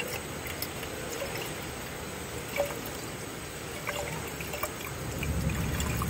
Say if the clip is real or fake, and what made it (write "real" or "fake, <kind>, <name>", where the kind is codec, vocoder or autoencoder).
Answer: real